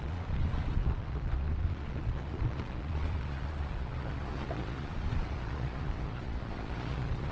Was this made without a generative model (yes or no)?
no